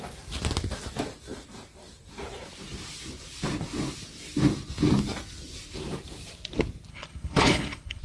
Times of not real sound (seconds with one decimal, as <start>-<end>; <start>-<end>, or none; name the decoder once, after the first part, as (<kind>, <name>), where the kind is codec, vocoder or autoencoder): 6.9-8.0 (codec, HILCodec)